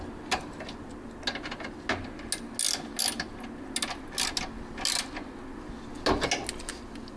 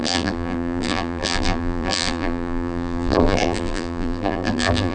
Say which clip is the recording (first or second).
first